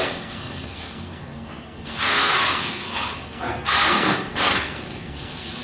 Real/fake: fake